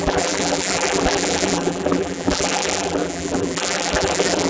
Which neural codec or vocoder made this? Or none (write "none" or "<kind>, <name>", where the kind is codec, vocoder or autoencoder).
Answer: vocoder, BigVGAN v2